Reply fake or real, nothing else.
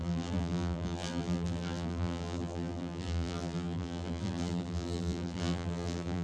fake